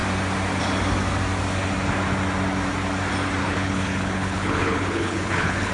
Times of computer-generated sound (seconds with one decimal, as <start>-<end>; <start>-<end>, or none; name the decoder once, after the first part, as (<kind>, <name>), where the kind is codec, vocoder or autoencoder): 3.4-5.7 (codec, HILCodec)